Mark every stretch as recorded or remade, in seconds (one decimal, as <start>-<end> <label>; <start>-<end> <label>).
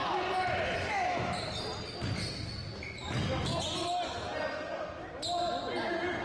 0.0-6.2 recorded